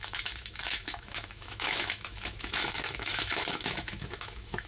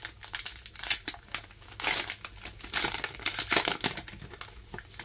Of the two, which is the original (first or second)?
second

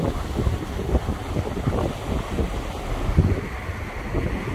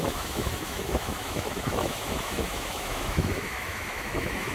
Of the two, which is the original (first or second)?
first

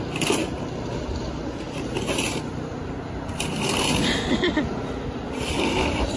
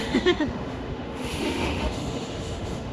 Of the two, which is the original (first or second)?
first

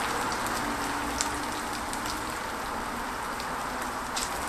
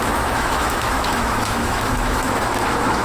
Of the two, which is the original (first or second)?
first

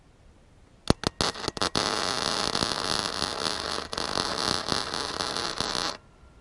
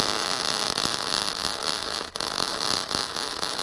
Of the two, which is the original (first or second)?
first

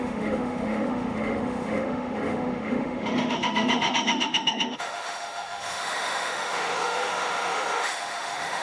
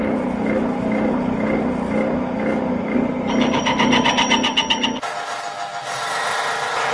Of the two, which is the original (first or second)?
second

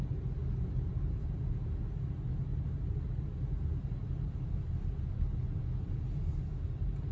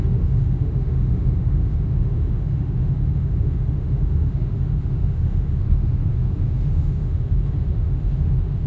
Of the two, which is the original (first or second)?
first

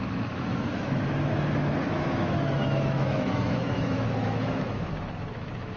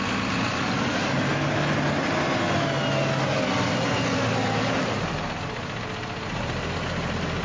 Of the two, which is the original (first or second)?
second